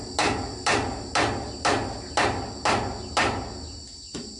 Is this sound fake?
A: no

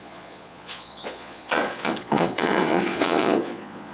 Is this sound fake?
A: yes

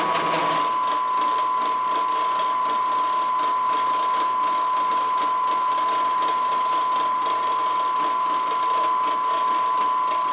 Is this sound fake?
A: no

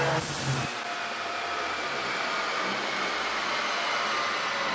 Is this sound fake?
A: no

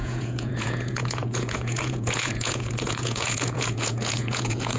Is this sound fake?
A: yes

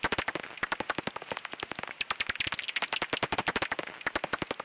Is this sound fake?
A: no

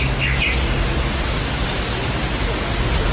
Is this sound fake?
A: no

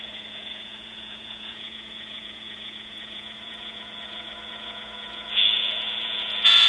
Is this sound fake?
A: yes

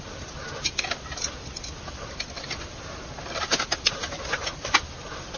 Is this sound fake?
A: no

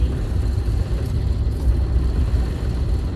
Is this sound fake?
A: no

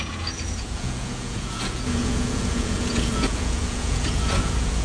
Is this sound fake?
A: yes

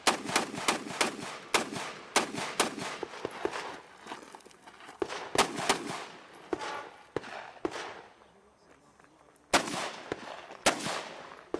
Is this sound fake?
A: no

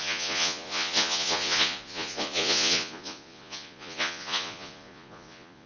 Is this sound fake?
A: yes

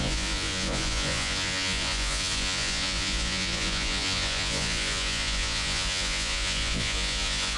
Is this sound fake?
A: yes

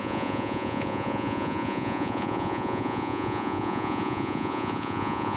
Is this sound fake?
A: yes